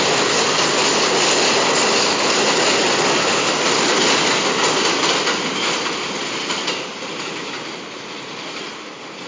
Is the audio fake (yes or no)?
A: no